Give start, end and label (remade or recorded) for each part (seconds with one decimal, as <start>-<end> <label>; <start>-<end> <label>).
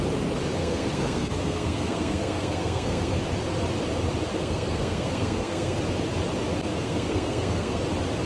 0.0-0.6 recorded; 0.6-3.2 remade; 3.2-4.3 recorded; 4.3-5.8 remade; 5.8-6.7 recorded; 6.7-7.8 remade; 7.8-8.3 recorded